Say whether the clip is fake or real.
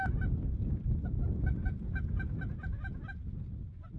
real